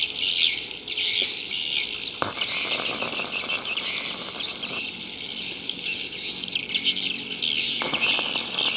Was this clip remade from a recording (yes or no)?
no